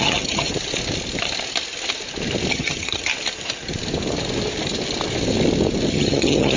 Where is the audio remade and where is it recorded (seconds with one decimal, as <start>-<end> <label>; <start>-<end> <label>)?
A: 0.0-0.5 remade; 0.5-2.5 recorded; 2.5-3.1 remade; 3.1-5.9 recorded; 5.9-6.6 remade